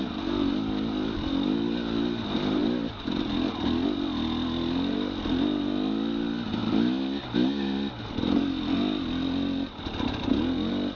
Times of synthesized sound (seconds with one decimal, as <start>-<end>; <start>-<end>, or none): none